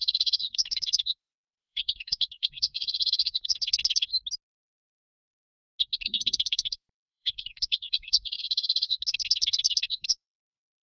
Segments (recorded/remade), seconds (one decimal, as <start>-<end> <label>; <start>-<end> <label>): 0.0-4.1 remade; 4.1-5.8 recorded; 5.8-10.8 remade